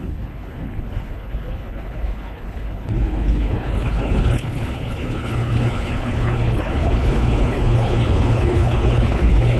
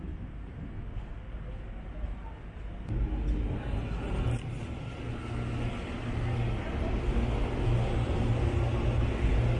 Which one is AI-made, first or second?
first